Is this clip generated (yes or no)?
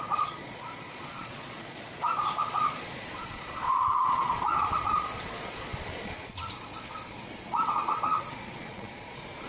yes